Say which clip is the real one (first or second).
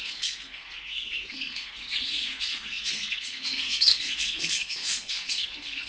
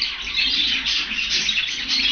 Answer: second